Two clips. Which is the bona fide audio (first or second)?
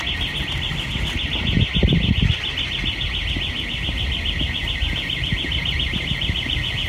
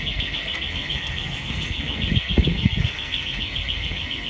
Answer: first